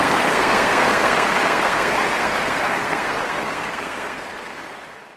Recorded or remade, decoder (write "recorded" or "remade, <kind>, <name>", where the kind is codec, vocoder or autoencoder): remade, codec, SNAC